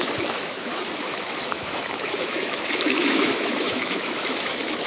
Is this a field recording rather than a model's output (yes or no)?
no